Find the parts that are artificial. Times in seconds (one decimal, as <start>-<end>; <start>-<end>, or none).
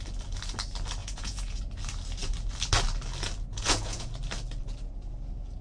1.0-1.6; 3.5-4.1